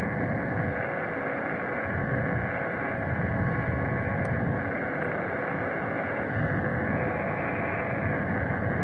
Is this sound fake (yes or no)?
no